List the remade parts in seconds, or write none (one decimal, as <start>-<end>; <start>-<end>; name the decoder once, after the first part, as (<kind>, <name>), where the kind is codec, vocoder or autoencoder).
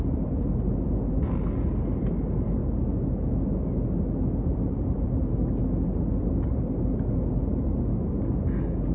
none